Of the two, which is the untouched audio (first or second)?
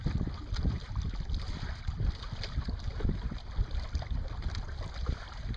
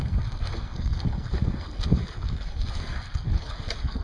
first